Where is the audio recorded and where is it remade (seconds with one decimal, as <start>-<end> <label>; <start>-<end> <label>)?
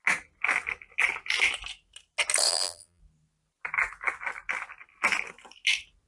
0.0-2.5 recorded; 2.5-3.0 remade; 3.0-6.1 recorded